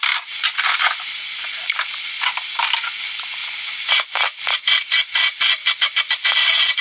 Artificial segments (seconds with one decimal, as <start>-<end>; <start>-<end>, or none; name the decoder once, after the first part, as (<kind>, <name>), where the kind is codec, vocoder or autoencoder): 0.0-5.6 (vocoder, BigVGAN v2)